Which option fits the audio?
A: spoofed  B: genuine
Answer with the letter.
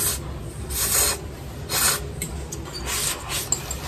B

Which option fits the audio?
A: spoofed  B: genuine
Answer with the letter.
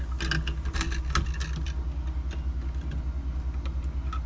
B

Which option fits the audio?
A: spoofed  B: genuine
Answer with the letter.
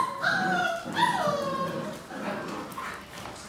B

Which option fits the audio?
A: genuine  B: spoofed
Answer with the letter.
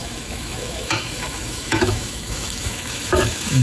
B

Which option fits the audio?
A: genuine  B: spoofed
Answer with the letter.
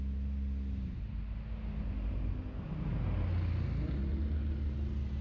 A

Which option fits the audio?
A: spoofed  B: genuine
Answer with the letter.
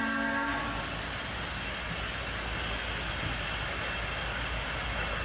B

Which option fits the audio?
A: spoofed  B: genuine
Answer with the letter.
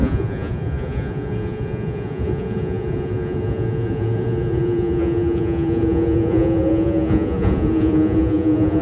A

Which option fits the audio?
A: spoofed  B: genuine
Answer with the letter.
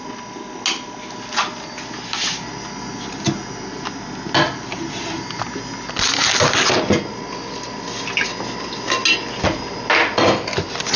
B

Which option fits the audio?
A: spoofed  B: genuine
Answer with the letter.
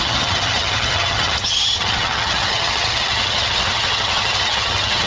A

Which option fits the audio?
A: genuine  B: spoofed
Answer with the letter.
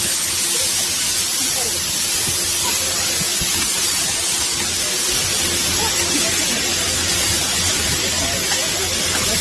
A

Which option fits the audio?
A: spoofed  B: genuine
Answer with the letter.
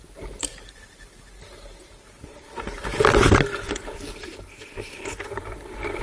A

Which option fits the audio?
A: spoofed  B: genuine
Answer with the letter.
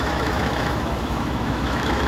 A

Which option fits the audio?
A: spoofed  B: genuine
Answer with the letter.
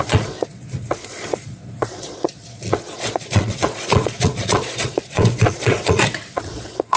A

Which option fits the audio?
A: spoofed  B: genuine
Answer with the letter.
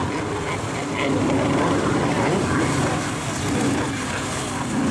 B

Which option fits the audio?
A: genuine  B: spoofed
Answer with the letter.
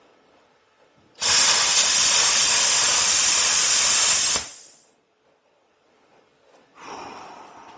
B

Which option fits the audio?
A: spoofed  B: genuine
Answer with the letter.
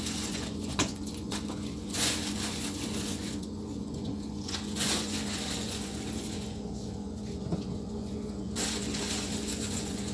A